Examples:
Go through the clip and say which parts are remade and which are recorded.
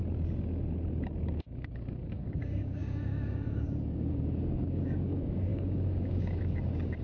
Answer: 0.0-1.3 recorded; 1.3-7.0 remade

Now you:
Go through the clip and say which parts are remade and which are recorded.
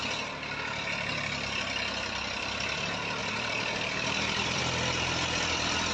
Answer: 0.0-3.2 recorded; 3.2-4.6 remade; 4.6-5.9 recorded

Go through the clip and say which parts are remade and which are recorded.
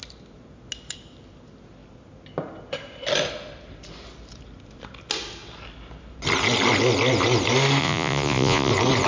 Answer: 0.0-7.8 recorded; 7.8-8.7 remade; 8.7-9.1 recorded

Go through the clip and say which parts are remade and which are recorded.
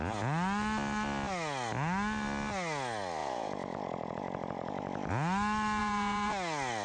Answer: 0.0-3.2 recorded; 3.2-5.1 remade; 5.1-5.8 recorded; 5.8-6.3 remade; 6.3-6.8 recorded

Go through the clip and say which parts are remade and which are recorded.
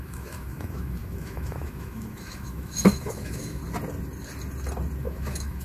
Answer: 0.0-3.6 remade; 3.6-5.0 recorded; 5.0-5.6 remade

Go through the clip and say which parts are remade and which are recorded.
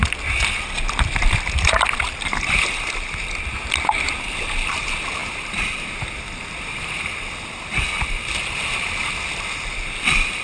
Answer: 0.0-10.4 recorded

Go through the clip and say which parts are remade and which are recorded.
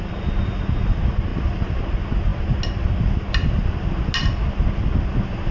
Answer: 0.0-5.5 recorded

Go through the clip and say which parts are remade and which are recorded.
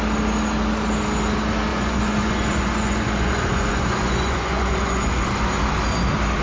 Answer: 0.0-1.7 recorded; 1.7-5.5 remade; 5.5-6.4 recorded